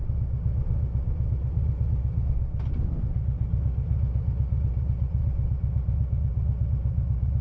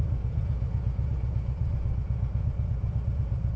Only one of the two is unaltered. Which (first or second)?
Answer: first